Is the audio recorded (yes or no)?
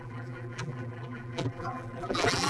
no